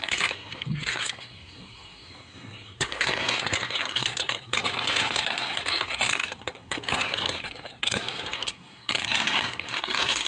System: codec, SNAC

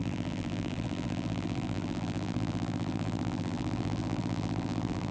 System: vocoder, BigVGAN v2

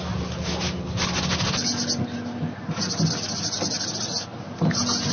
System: none